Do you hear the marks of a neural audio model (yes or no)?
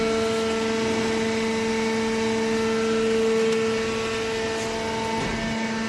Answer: no